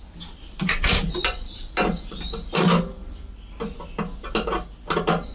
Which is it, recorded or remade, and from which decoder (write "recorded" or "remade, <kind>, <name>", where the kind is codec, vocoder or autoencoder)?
recorded